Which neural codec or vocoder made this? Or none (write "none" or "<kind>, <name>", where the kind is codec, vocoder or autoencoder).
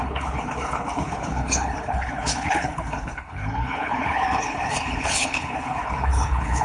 codec, HILCodec